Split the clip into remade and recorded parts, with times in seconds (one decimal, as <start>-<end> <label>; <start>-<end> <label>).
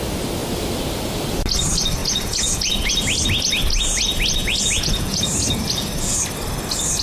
0.0-2.0 recorded; 2.0-2.9 remade; 2.9-4.4 recorded; 4.4-5.2 remade; 5.2-7.0 recorded